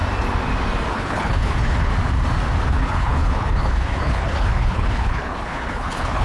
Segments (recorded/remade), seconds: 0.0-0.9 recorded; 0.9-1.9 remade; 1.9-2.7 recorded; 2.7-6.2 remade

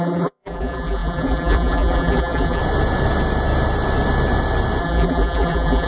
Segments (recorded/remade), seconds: 0.0-2.6 remade; 2.6-4.8 recorded; 4.8-5.9 remade

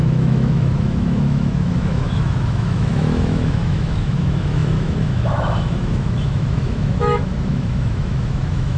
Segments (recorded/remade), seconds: 0.0-8.8 remade

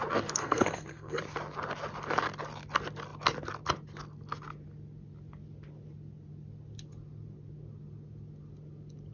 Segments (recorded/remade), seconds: 0.0-0.4 recorded; 0.4-1.2 remade; 1.2-9.1 recorded